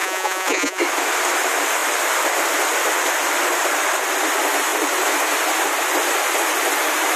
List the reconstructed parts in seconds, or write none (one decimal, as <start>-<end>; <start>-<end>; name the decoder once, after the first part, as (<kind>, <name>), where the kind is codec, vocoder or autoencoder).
0.0-0.8 (vocoder, Vocos)